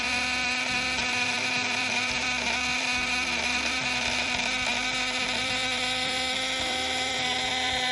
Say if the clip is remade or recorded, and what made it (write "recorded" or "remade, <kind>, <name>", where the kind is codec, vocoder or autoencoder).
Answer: remade, vocoder, BigVGAN v2